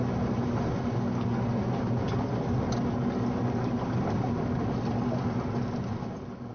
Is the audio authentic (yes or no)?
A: yes